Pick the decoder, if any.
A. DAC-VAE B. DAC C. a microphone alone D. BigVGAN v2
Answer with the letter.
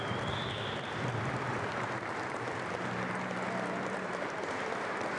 D